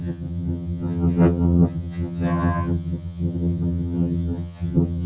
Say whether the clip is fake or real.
fake